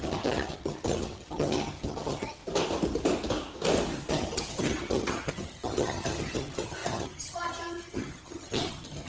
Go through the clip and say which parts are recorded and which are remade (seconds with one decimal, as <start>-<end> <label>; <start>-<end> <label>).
0.0-2.4 remade; 2.4-4.1 recorded; 4.1-9.1 remade